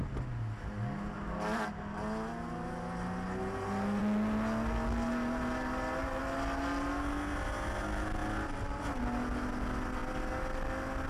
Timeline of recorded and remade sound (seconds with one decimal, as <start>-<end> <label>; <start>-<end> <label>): 0.0-11.1 recorded